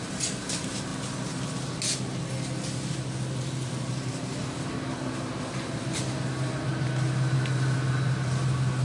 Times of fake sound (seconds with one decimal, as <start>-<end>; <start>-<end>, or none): none

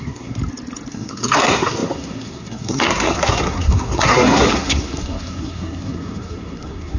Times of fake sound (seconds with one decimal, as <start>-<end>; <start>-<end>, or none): 0.0-0.4; 0.9-7.0

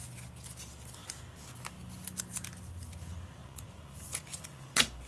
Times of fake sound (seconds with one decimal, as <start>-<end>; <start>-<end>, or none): 3.4-5.1

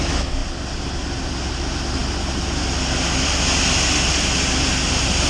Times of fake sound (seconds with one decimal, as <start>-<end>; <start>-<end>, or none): none

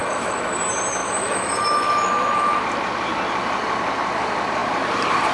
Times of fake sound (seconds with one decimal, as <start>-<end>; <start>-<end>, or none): 0.0-0.5; 1.0-2.6

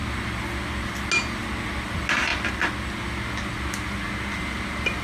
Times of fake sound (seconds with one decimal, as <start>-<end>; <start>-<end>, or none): none